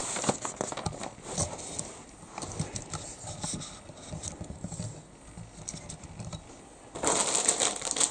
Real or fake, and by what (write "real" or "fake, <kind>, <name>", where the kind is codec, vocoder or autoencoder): real